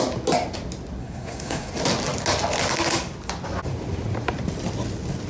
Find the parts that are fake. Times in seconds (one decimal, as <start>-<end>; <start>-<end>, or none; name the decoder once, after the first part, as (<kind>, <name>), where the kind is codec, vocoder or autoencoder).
1.0-1.7 (codec, SNAC)